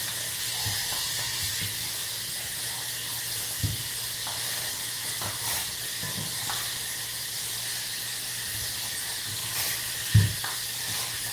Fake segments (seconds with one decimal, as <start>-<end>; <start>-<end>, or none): none